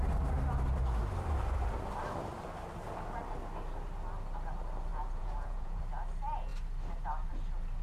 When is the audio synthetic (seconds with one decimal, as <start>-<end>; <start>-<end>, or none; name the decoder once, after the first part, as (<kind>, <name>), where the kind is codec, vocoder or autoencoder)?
4.9-5.8 (vocoder, Vocos)